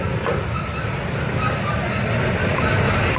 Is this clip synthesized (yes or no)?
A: no